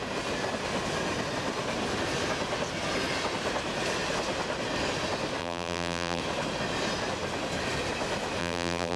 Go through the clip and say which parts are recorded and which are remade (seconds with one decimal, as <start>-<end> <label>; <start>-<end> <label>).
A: 0.0-5.4 recorded; 5.4-6.2 remade; 6.2-8.4 recorded; 8.4-9.0 remade